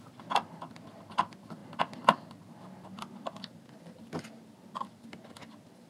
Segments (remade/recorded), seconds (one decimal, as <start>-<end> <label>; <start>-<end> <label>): 0.0-5.9 recorded